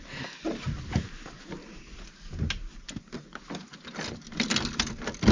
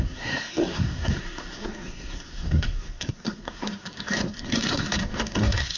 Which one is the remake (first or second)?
second